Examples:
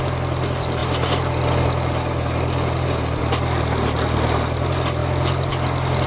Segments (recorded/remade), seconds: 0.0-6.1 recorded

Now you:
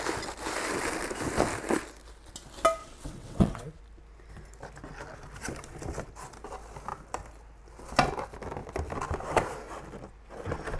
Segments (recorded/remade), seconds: 0.0-2.8 recorded; 2.8-3.8 remade; 3.8-10.8 recorded

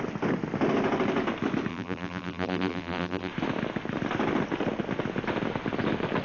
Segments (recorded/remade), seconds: 0.0-1.7 recorded; 1.7-3.3 remade; 3.3-6.2 recorded

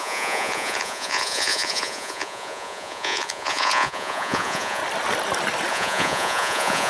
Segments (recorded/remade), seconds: 0.0-4.8 remade; 4.8-5.7 recorded; 5.7-6.9 remade